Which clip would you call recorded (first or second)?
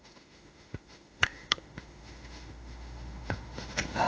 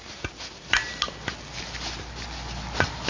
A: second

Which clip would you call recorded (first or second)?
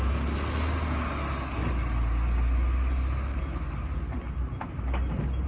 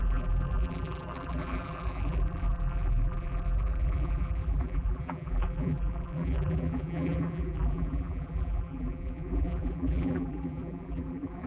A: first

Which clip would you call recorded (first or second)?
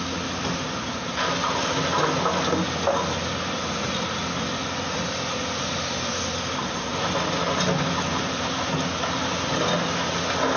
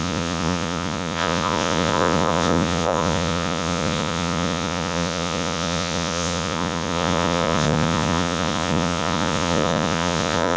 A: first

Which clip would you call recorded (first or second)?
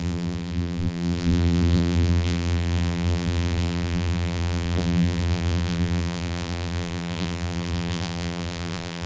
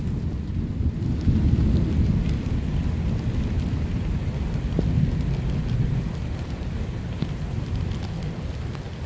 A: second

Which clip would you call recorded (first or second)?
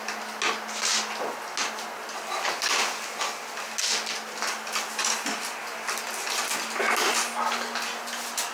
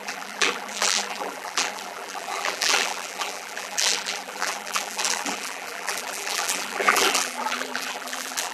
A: first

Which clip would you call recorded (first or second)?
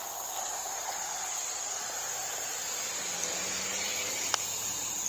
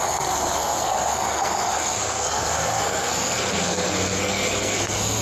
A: first